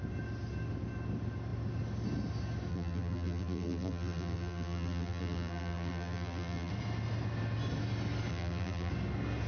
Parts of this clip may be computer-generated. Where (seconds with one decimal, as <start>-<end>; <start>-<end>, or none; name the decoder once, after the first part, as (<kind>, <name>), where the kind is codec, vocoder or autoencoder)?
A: 2.7-6.7 (vocoder, BigVGAN v2); 8.3-8.9